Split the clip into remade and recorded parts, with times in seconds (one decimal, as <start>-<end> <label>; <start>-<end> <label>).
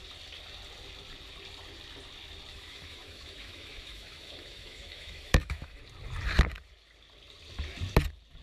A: 0.0-2.5 recorded; 2.5-5.8 remade; 5.8-8.4 recorded